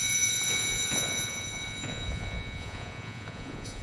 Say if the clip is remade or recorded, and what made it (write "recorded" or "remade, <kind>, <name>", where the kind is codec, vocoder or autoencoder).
remade, vocoder, Vocos